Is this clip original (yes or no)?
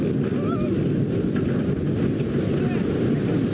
yes